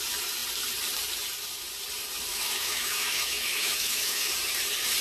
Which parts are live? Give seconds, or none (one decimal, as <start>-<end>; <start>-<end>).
0.0-2.3; 4.3-5.0